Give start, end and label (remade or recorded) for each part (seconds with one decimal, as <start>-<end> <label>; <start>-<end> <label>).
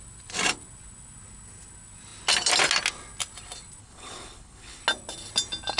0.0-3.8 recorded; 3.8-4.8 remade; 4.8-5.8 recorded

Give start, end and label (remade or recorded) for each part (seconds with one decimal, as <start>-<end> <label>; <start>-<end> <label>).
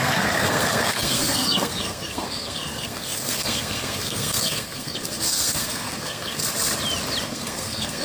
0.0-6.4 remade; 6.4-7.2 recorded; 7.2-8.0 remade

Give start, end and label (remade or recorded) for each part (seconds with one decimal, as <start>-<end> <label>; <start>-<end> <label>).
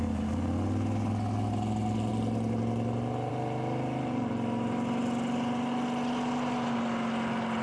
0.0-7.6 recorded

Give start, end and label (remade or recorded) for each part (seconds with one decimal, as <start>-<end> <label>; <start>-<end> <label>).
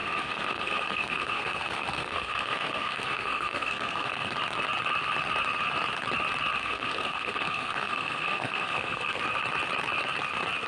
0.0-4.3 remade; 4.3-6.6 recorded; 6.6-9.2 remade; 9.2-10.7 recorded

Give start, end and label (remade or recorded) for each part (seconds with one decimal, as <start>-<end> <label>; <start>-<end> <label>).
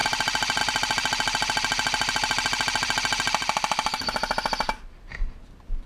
0.0-0.6 remade; 0.6-5.9 recorded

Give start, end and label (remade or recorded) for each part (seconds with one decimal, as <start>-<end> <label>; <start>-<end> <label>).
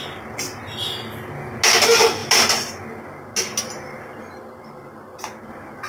0.0-5.9 recorded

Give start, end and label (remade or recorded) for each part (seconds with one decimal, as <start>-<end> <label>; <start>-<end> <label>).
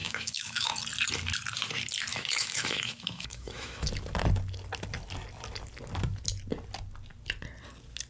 0.0-0.7 remade; 0.7-2.1 recorded; 2.1-3.9 remade; 3.9-8.1 recorded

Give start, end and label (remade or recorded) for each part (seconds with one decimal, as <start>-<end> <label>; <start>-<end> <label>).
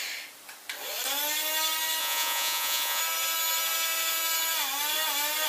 0.0-2.0 recorded; 2.0-3.0 remade; 3.0-5.5 recorded